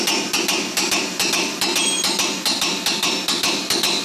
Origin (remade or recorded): recorded